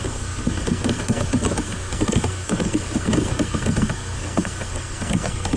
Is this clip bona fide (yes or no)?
no